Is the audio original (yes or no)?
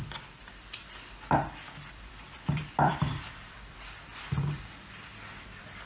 no